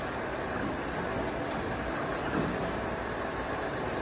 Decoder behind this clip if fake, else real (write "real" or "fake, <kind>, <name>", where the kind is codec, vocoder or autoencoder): real